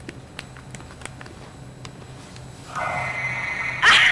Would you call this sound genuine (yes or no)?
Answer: yes